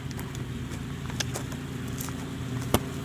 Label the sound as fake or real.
real